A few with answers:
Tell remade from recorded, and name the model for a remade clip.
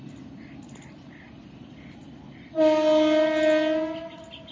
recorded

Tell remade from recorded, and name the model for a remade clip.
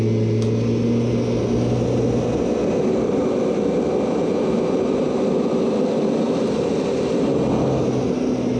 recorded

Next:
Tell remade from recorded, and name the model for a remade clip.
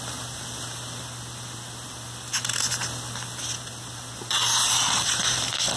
recorded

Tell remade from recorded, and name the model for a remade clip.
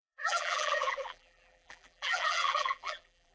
remade, vocoder, BigVGAN v2